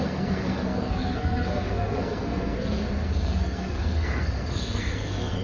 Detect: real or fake fake